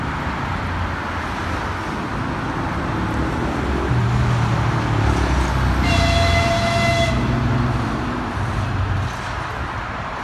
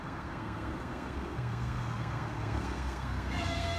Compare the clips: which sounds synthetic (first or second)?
second